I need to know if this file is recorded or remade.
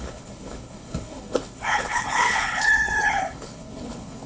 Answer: remade